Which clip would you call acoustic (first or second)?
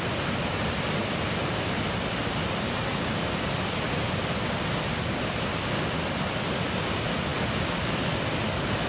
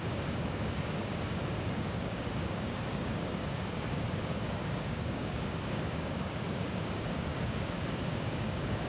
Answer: first